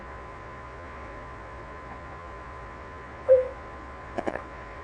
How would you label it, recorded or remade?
remade